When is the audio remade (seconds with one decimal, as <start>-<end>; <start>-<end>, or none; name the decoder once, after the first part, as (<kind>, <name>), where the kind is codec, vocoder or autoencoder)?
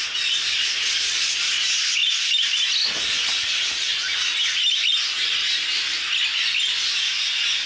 none